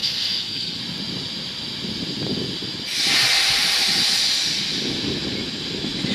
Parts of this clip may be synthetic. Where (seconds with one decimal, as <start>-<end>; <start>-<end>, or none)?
0.0-0.8

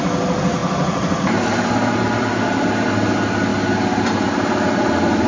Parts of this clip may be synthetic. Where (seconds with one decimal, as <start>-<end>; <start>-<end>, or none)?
0.6-1.2; 3.5-5.3